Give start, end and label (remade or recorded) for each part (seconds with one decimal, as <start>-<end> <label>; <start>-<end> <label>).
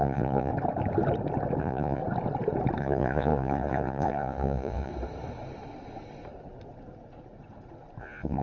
0.0-0.5 remade; 0.5-1.6 recorded; 1.6-2.0 remade; 2.0-2.8 recorded; 2.8-4.9 remade; 4.9-8.0 recorded; 8.0-8.4 remade